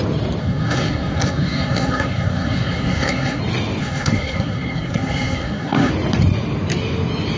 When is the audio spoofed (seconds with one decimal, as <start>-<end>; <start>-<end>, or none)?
0.4-3.4; 3.8-5.9